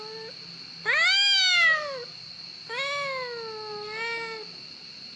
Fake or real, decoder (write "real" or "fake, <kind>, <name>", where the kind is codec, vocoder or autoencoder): real